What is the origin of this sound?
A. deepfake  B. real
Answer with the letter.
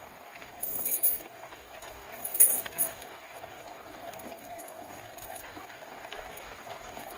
A